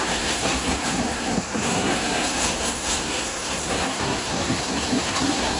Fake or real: fake